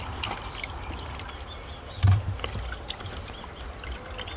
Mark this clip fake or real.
real